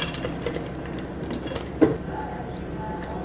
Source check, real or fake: real